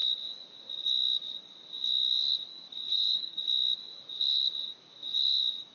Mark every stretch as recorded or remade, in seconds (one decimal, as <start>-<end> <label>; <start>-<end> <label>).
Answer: 0.0-2.9 recorded; 2.9-3.4 remade; 3.4-5.7 recorded